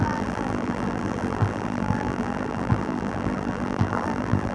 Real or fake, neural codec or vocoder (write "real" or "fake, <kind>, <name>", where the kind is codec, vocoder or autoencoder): fake, vocoder, BigVGAN v2